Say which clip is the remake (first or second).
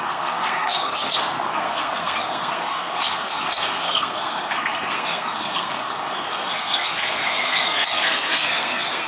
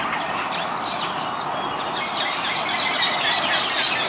first